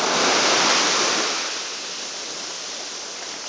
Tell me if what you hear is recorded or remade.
recorded